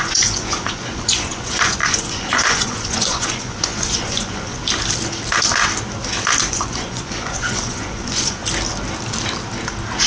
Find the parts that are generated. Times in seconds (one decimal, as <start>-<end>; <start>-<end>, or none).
0.0-4.6; 6.5-8.4